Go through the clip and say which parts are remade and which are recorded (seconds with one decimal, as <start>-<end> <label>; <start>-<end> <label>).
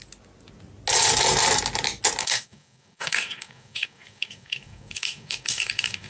0.0-2.2 recorded; 2.2-6.1 remade